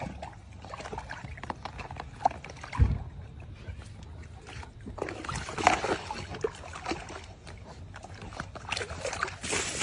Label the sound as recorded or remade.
recorded